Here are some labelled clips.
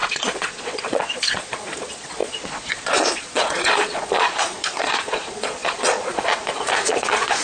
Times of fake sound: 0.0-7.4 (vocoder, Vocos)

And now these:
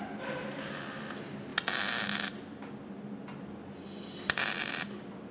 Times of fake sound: none